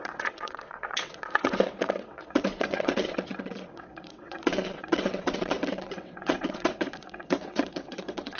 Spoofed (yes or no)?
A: yes